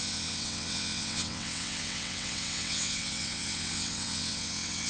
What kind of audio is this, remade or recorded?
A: remade